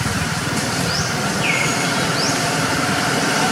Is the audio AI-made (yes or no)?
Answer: yes